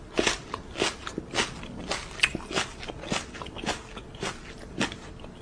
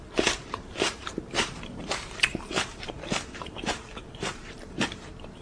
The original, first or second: first